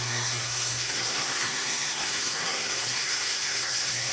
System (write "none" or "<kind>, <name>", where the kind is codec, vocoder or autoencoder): codec, SNAC